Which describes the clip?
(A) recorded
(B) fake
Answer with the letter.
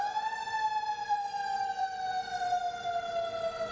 B